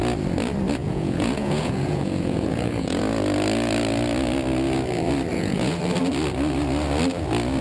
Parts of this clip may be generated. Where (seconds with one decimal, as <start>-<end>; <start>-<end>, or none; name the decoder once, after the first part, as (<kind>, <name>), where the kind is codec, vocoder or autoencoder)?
0.8-3.0 (vocoder, Vocos); 5.3-5.8